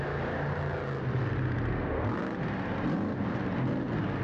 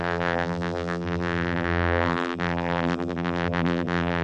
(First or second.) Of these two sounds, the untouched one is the first